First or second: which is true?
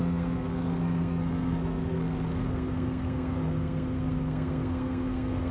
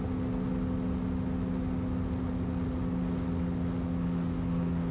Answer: second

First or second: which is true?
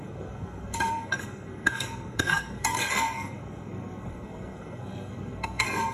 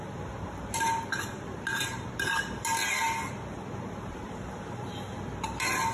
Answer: second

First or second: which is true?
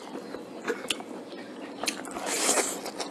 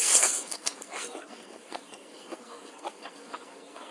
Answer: first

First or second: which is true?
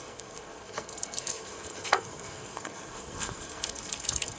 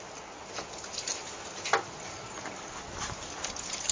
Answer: second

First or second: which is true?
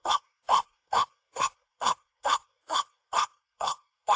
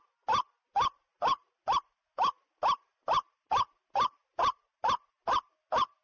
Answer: second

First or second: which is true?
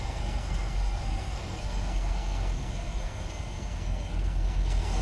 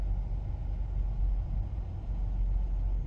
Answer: second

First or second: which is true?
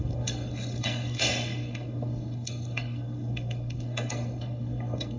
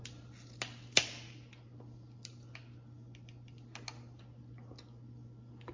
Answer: second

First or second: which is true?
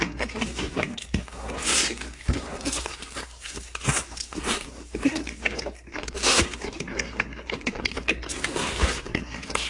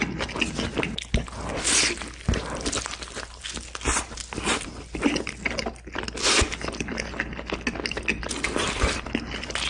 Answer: second